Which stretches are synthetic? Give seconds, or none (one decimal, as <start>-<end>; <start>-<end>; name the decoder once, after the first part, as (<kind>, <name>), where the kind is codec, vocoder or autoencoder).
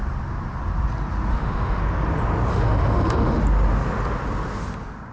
1.3-1.8 (autoencoder, DAC-VAE); 2.5-3.4